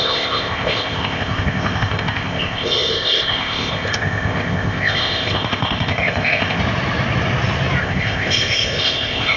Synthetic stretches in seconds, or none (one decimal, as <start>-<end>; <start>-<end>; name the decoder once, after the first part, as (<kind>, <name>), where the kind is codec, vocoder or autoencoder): 0.0-6.6 (codec, ZipCodec); 7.8-9.4